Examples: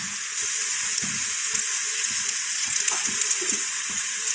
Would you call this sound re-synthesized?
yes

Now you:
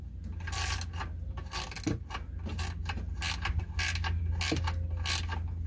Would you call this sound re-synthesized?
no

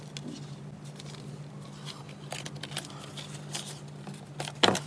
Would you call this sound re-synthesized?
no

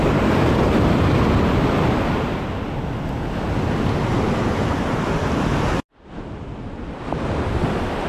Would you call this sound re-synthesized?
no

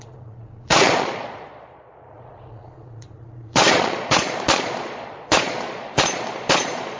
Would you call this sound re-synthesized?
yes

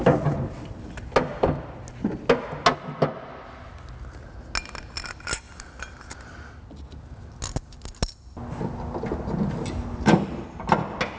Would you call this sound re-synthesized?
no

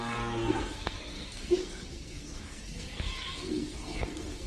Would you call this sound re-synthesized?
yes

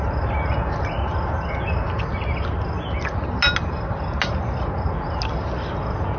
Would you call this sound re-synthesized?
no